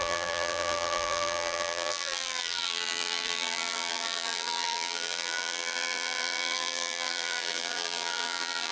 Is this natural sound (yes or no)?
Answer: no